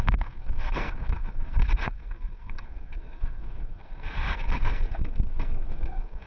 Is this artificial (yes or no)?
yes